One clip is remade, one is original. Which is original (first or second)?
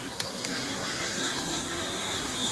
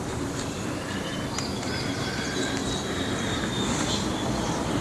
second